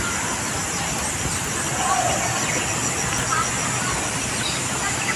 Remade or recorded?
recorded